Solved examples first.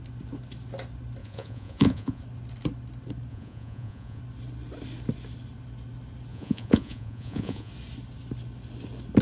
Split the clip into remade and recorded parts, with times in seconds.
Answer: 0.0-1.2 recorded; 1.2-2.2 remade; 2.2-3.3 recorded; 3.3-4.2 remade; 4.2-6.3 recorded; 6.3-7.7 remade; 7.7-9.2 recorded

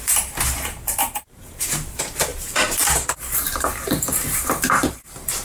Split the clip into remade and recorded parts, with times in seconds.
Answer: 0.0-5.4 remade

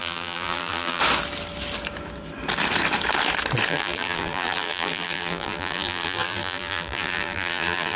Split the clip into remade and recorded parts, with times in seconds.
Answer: 0.0-1.0 remade; 1.0-3.7 recorded; 3.7-8.0 remade

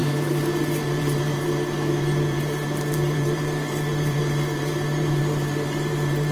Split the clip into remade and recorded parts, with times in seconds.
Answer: 0.0-6.3 remade

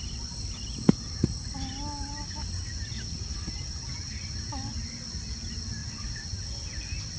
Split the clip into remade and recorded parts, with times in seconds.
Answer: 0.0-7.2 recorded

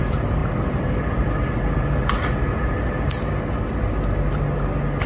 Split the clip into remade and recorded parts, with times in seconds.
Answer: 0.0-5.1 recorded